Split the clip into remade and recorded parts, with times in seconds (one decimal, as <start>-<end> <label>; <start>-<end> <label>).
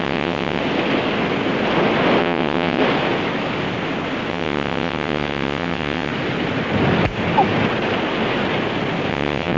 0.0-0.6 remade; 0.6-2.2 recorded; 2.2-2.8 remade; 2.8-4.3 recorded; 4.3-6.1 remade; 6.1-9.1 recorded; 9.1-9.6 remade